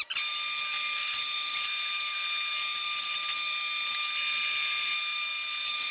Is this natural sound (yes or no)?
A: yes